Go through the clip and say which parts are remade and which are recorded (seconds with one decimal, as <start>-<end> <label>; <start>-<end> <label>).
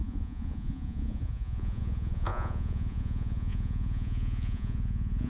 0.0-5.3 remade